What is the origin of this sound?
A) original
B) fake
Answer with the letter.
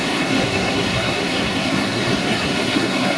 B